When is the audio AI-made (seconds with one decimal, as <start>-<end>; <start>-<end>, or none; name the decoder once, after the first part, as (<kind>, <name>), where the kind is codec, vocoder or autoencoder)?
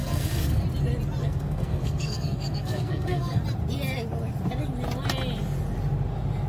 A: 0.0-0.6 (codec, SNAC); 1.2-3.4